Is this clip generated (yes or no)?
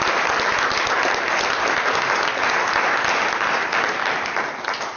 no